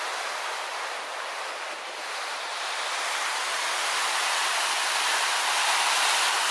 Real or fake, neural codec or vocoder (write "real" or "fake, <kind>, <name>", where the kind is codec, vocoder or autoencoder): real